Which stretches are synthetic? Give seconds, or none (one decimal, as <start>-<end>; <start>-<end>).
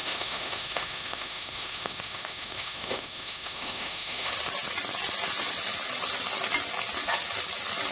0.0-4.3